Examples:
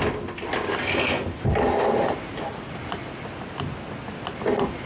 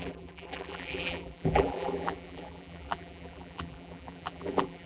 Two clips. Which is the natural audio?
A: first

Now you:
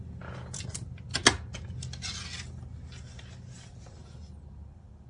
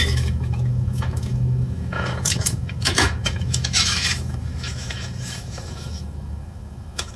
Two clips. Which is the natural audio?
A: first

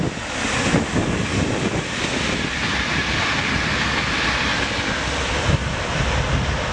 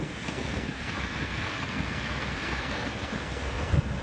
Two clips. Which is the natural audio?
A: first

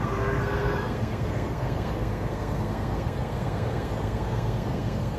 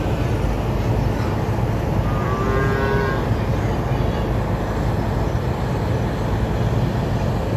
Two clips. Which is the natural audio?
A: second